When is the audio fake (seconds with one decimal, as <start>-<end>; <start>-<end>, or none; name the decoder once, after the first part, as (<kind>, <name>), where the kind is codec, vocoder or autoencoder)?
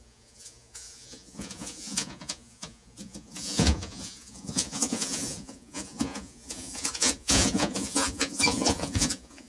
0.0-9.5 (vocoder, Vocos)